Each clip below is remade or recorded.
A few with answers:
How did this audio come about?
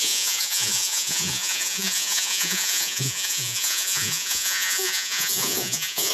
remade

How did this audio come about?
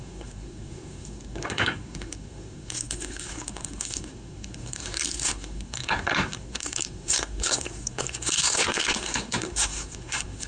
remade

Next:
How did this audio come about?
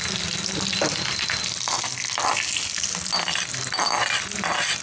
recorded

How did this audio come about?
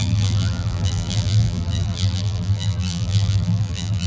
remade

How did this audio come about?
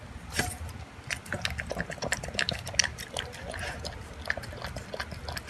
recorded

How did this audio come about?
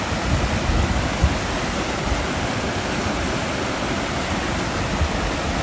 recorded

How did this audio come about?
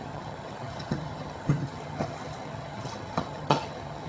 remade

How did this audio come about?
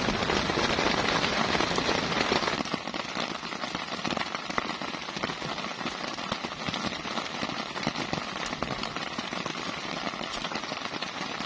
recorded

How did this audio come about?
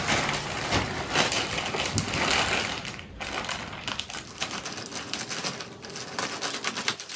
recorded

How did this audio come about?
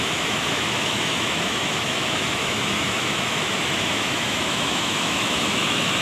remade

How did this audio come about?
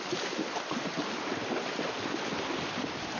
recorded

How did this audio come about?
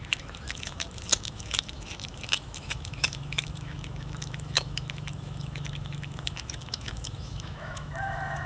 remade